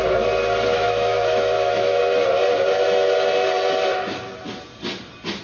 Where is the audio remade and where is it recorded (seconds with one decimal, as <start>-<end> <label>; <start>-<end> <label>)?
0.0-0.7 recorded; 0.7-2.0 remade; 2.0-5.4 recorded